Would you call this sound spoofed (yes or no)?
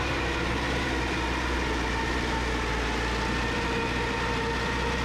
no